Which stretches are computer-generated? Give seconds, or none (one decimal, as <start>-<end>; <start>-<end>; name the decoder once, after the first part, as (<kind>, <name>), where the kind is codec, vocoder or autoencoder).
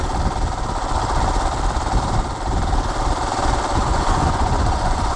3.9-5.2 (vocoder, Vocos)